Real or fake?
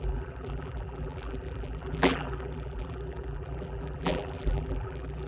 fake